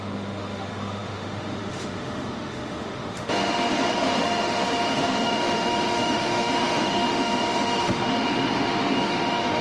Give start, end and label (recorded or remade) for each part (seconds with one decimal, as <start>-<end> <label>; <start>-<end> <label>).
0.0-9.6 remade